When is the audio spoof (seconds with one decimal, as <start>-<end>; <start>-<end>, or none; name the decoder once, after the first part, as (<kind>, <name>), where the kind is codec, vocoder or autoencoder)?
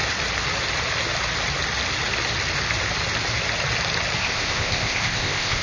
4.2-5.6 (codec, ZipCodec)